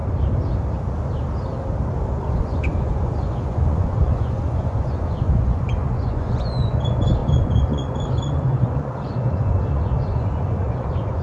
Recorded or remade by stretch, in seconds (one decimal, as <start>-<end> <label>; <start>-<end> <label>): 0.0-2.2 recorded; 2.2-11.2 remade